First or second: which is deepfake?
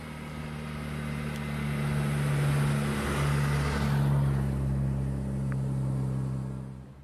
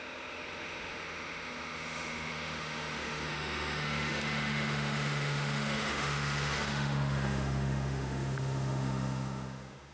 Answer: second